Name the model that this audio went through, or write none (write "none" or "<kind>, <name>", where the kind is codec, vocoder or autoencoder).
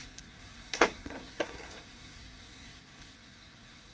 codec, SNAC